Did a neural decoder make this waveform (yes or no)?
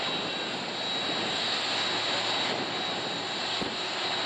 no